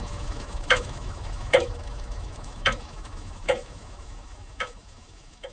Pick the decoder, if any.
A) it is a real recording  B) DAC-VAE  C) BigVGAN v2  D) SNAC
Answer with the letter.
B